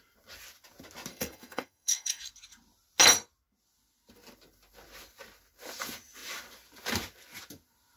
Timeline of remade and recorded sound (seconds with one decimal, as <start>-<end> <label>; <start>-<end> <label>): 0.0-1.1 recorded; 1.1-2.3 remade; 2.3-8.0 recorded